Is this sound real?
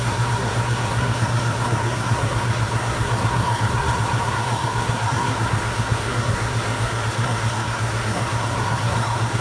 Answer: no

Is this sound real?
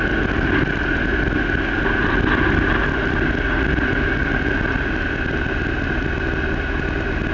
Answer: yes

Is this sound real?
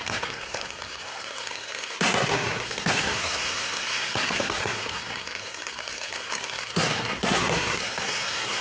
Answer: no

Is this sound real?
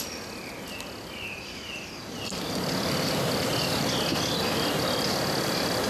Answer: yes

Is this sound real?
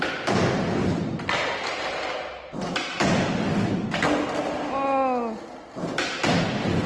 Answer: yes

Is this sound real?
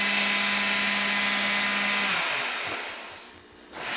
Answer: yes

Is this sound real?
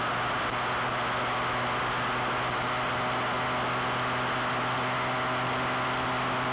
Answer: yes